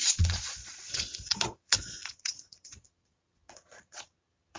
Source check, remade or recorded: remade